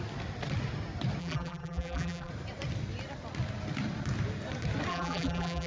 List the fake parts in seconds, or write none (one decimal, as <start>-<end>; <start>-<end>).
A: 1.2-2.3; 4.9-5.7